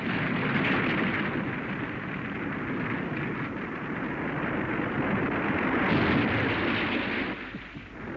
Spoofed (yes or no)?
no